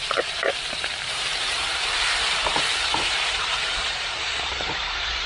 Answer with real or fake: fake